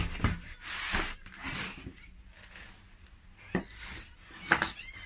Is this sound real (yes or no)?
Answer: yes